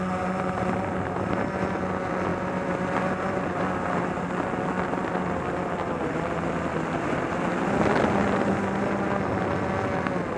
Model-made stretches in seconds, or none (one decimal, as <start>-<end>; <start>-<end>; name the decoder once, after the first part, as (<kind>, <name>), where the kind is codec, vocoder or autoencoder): none